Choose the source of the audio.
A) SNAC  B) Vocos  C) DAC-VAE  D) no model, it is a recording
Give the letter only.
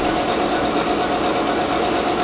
D